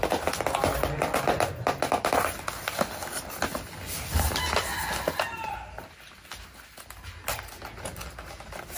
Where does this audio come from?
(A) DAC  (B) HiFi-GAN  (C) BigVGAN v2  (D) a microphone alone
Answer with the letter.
D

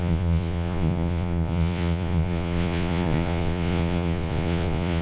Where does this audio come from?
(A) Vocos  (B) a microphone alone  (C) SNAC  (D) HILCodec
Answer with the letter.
A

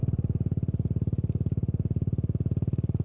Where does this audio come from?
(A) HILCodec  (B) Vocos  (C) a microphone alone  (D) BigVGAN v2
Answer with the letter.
C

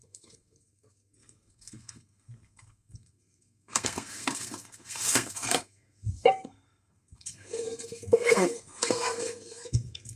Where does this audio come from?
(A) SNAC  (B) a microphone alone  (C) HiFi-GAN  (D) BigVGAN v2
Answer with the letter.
A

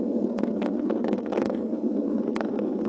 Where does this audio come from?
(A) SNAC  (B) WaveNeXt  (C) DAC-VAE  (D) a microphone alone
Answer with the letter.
A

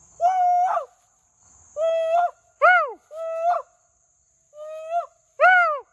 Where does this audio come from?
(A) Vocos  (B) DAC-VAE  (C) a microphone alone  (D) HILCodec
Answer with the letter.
C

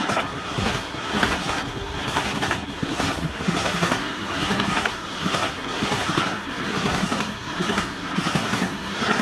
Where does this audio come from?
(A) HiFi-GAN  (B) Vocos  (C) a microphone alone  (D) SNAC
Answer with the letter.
D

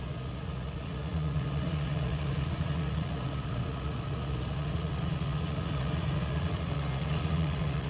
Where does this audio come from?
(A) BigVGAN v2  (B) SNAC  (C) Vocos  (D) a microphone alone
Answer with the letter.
C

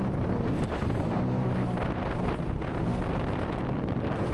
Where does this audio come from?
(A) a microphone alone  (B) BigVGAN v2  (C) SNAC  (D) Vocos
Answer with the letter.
A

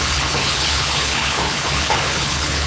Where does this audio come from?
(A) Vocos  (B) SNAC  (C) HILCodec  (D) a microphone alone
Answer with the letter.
C